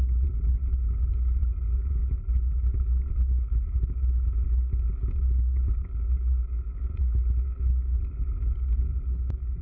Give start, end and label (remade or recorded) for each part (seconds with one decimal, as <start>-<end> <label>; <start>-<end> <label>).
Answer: 0.0-9.6 recorded